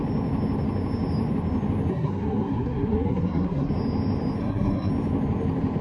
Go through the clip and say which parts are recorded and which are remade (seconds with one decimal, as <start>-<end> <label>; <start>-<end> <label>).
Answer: 0.0-1.9 recorded; 1.9-3.7 remade; 3.7-4.4 recorded; 4.4-4.9 remade; 4.9-5.8 recorded